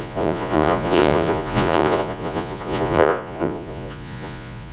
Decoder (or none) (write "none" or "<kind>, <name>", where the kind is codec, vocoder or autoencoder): vocoder, Vocos